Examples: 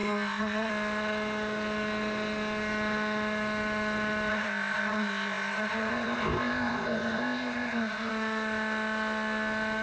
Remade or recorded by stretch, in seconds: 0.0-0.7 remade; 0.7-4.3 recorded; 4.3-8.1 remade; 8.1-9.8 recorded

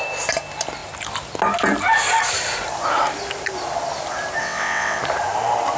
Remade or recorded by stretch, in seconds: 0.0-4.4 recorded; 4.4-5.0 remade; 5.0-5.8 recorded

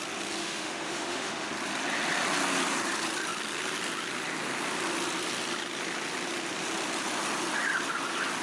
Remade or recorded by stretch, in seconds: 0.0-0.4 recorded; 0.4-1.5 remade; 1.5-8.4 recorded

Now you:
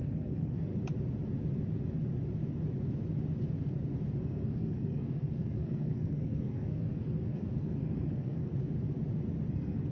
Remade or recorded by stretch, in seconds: 0.0-0.7 remade; 0.7-4.2 recorded; 4.2-8.5 remade; 8.5-9.5 recorded; 9.5-9.9 remade

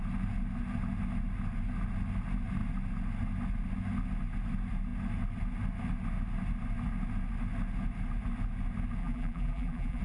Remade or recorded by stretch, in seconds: 0.0-9.0 recorded; 9.0-10.0 remade

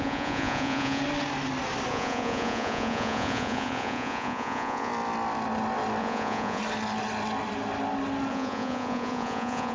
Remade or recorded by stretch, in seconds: 0.0-1.0 remade; 1.0-1.9 recorded; 1.9-4.9 remade; 4.9-6.0 recorded; 6.0-6.6 remade; 6.6-8.3 recorded; 8.3-9.7 remade